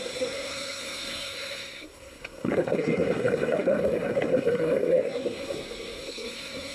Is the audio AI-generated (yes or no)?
yes